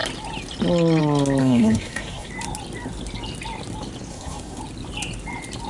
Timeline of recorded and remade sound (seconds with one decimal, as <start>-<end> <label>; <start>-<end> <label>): 0.0-1.4 recorded; 1.4-2.3 remade; 2.3-4.1 recorded; 4.1-4.6 remade; 4.6-5.7 recorded

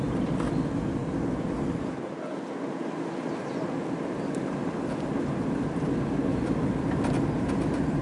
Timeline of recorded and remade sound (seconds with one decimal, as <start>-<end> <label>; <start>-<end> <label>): 0.0-8.0 recorded

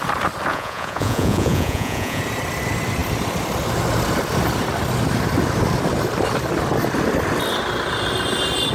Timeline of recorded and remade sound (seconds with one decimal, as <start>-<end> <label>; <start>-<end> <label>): 0.0-0.5 recorded; 0.5-2.2 remade; 2.2-8.7 recorded

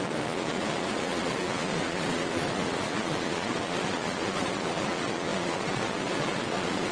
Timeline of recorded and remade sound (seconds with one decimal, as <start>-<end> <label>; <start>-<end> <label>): 0.0-6.9 remade